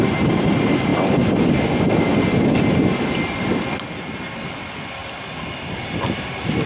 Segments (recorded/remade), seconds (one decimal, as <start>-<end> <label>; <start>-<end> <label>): 0.0-0.9 remade; 0.9-3.1 recorded; 3.1-3.5 remade; 3.5-4.2 recorded; 4.2-6.7 remade